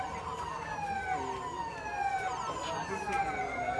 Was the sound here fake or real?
real